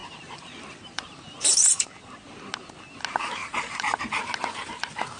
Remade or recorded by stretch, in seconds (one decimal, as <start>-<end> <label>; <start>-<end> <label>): 0.0-1.9 remade; 1.9-3.4 recorded; 3.4-4.0 remade; 4.0-5.2 recorded

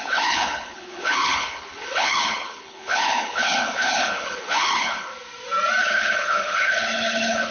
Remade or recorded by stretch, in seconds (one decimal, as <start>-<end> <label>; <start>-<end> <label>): 0.0-5.1 remade; 5.1-5.8 recorded; 5.8-7.5 remade

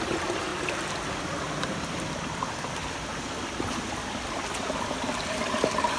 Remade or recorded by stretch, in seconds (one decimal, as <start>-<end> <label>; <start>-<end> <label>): 0.0-2.8 remade; 2.8-4.8 recorded; 4.8-6.0 remade

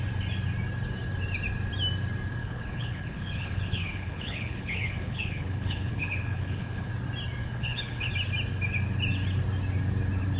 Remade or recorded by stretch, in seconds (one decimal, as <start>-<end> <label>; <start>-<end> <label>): 0.0-2.4 recorded; 2.4-6.9 remade; 6.9-7.4 recorded; 7.4-8.1 remade; 8.1-10.4 recorded

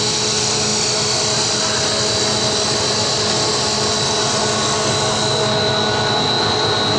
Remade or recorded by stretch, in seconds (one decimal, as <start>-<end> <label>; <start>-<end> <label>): 0.0-7.0 recorded

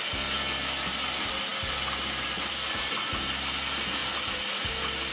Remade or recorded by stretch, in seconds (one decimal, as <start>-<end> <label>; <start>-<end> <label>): 0.0-5.1 recorded